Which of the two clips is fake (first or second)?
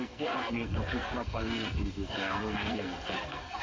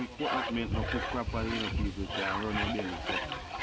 first